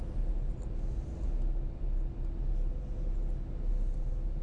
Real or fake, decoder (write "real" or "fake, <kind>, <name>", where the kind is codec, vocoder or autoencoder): real